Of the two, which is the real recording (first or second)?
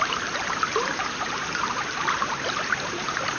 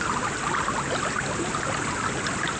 second